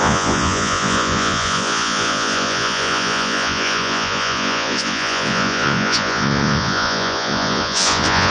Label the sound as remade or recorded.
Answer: remade